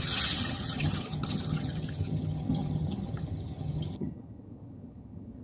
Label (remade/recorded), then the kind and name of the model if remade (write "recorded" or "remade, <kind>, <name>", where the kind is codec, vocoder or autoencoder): remade, vocoder, HiFi-GAN